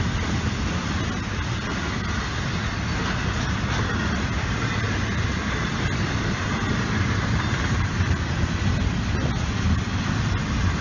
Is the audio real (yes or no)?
yes